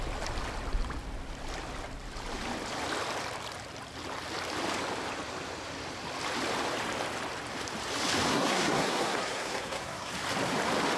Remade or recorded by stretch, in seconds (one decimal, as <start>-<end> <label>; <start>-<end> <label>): 0.0-8.3 recorded; 8.3-10.1 remade; 10.1-11.0 recorded